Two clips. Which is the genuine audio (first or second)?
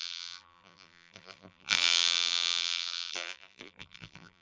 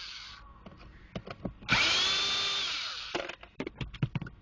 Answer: second